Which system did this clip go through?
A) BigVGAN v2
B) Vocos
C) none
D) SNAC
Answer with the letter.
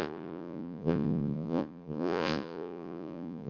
B